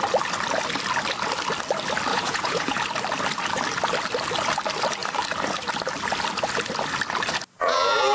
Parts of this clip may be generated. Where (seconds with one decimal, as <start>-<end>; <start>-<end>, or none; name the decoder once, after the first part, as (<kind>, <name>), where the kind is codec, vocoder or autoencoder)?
2.1-2.8 (vocoder, Vocos)